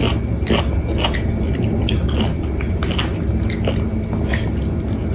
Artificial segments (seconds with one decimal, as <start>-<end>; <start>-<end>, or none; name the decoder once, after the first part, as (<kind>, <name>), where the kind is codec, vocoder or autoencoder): none